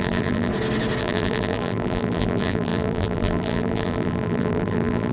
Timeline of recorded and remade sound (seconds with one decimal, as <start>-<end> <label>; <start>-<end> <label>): 0.0-0.5 remade; 0.5-1.0 recorded; 1.0-5.1 remade